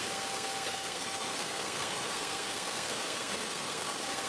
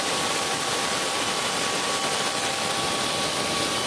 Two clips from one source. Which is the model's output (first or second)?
first